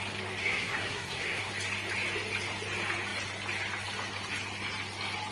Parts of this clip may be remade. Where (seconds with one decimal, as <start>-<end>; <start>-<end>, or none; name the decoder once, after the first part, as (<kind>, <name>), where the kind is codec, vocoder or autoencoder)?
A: 0.4-1.5 (codec, SNAC)